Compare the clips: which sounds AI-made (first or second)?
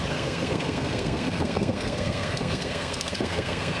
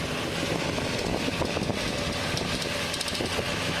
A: first